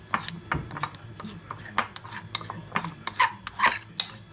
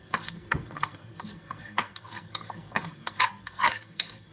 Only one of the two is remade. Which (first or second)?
second